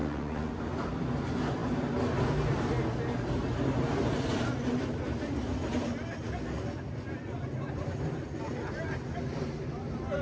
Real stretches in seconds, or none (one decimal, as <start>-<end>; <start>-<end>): 0.5-10.2